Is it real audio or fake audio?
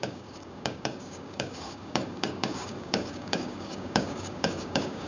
fake